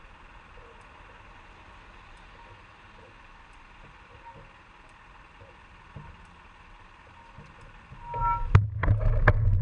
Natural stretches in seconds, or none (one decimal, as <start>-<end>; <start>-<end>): 0.0-9.6